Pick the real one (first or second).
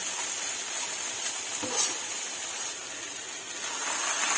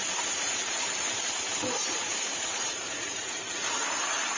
first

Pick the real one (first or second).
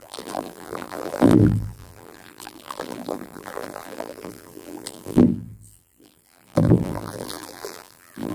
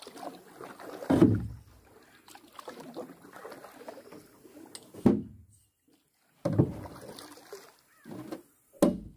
second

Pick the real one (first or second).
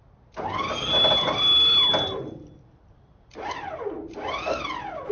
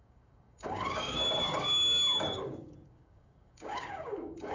first